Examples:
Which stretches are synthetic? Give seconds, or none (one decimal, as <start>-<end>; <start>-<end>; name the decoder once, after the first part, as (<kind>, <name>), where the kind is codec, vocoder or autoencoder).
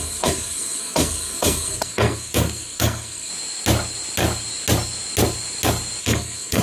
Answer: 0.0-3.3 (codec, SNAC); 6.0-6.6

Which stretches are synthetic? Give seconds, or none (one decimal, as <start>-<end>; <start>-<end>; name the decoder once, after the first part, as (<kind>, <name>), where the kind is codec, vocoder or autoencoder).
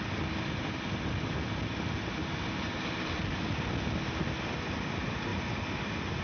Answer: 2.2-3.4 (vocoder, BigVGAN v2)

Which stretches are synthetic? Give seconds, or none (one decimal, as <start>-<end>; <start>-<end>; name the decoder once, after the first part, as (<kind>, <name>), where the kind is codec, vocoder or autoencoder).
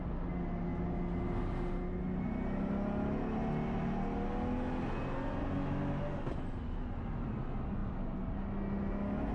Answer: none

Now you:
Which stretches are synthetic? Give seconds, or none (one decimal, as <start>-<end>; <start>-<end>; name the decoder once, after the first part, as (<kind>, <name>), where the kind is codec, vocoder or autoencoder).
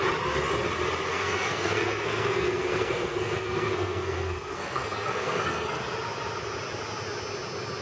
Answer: 1.1-5.8 (codec, SNAC)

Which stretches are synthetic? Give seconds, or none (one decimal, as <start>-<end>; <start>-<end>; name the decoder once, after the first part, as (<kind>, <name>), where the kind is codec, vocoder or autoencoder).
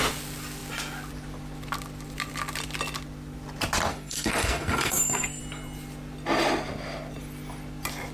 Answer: 3.9-5.4 (codec, SNAC)